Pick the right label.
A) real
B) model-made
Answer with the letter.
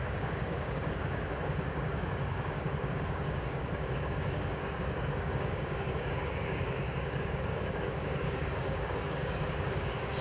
B